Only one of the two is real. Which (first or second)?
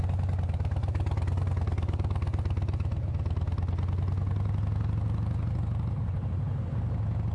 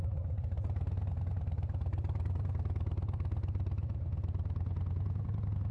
first